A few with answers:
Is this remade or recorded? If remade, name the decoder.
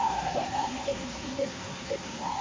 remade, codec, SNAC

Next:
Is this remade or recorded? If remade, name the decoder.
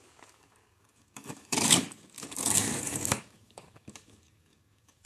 remade, codec, DAC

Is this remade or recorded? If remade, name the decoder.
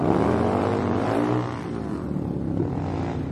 remade, vocoder, BigVGAN v2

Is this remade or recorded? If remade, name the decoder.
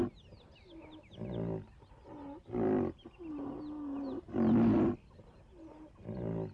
recorded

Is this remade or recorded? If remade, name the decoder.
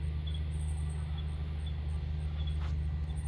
recorded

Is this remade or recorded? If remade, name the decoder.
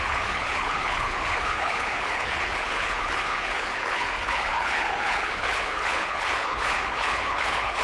remade, codec, HILCodec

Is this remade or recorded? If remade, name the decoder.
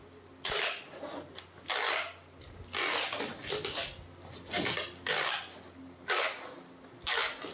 recorded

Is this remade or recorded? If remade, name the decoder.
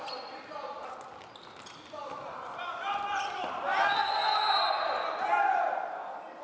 recorded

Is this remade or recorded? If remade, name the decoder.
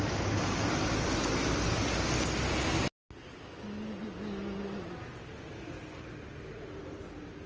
recorded